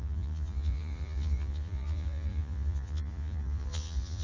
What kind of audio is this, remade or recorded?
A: remade